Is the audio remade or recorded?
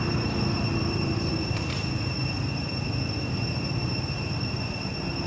recorded